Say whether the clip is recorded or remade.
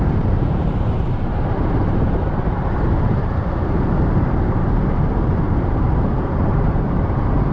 remade